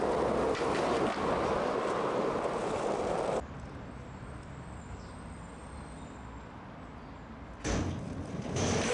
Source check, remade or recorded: recorded